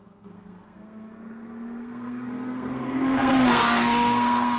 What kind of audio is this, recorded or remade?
remade